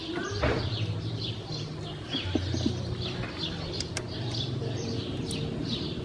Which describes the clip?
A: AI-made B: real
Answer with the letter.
A